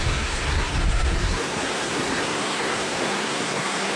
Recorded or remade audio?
remade